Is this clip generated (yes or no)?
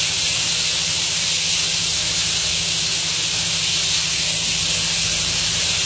no